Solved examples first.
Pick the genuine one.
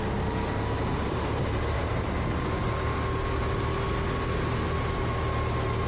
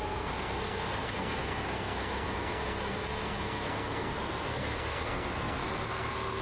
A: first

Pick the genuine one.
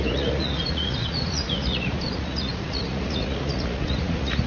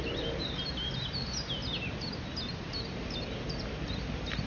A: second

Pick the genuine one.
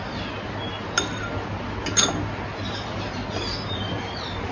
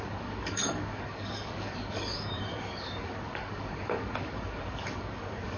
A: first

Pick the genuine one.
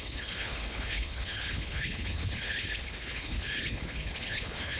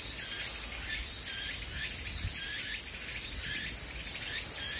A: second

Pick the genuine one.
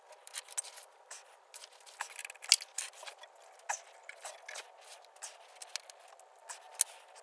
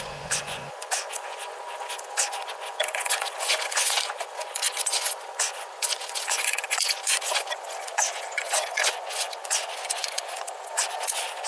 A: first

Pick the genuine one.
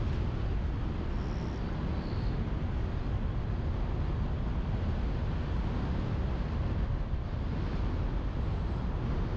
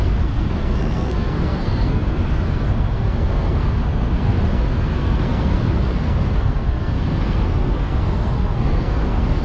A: first